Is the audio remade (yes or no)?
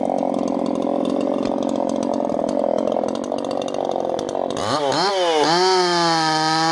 no